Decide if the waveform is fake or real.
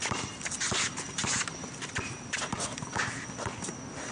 real